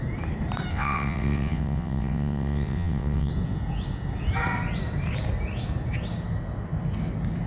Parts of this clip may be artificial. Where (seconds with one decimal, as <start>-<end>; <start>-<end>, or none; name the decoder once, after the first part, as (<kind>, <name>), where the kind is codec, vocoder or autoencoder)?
0.7-3.3 (vocoder, WaveNeXt)